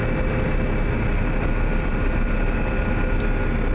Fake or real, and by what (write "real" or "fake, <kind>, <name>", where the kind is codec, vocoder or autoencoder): real